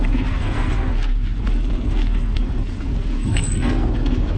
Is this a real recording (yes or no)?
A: no